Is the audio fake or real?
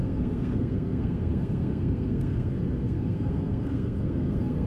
fake